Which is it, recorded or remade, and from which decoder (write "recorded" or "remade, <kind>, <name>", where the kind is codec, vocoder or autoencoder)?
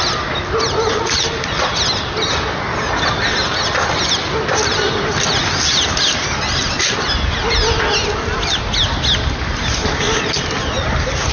recorded